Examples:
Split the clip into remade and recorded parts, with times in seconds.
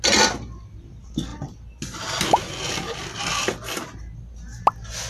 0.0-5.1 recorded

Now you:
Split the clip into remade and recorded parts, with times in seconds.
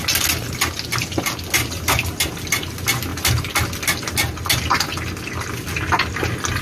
0.0-6.6 recorded